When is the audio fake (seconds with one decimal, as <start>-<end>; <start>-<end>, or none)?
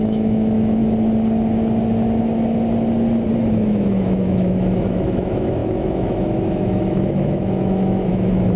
0.0-0.8; 3.5-8.6